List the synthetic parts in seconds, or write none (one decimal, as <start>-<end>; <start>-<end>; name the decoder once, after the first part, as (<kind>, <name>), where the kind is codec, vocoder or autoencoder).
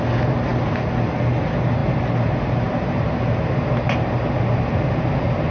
1.8-5.1 (vocoder, BigVGAN v2)